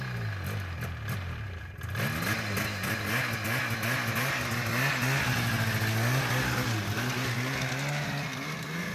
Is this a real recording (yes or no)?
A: yes